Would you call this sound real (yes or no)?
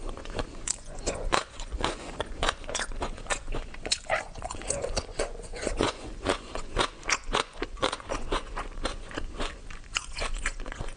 no